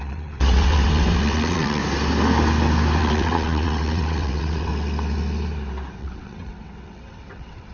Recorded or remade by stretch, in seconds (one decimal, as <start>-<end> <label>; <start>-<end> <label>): 0.0-1.8 remade; 1.8-3.0 recorded; 3.0-4.7 remade; 4.7-6.0 recorded; 6.0-7.7 remade